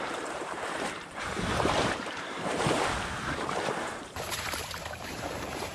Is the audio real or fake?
fake